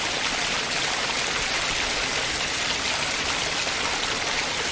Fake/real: real